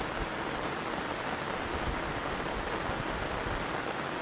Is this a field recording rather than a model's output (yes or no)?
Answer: yes